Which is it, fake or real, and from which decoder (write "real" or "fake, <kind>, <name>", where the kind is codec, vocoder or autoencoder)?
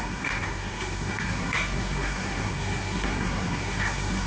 fake, codec, SNAC